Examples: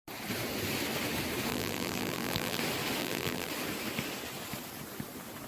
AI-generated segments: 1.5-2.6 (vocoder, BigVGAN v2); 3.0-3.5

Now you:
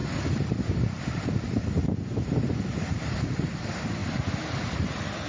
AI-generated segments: none

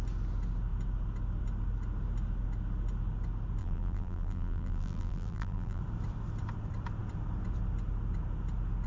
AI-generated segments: 3.6-5.8 (vocoder, BigVGAN v2)

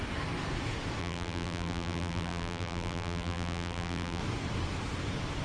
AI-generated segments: 1.0-4.2 (vocoder, BigVGAN v2)

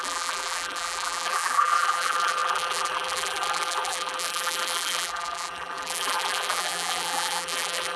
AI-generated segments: 0.0-8.0 (vocoder, BigVGAN v2)

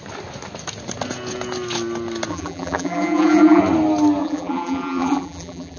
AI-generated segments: 2.3-3.6 (vocoder, BigVGAN v2); 4.2-5.8

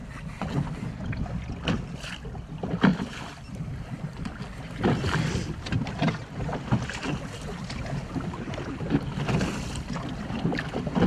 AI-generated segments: none

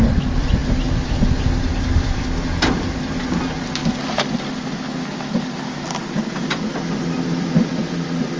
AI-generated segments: none